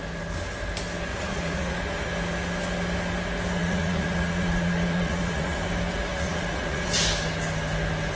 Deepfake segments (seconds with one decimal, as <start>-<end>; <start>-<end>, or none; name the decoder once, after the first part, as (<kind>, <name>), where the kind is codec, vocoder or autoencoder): 1.1-1.8 (vocoder, Vocos); 3.6-5.6; 6.1-6.9